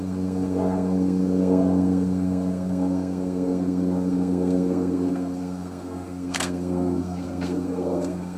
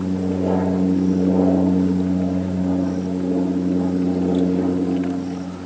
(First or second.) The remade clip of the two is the first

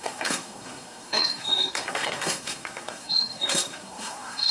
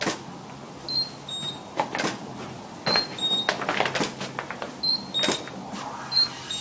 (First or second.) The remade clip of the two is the first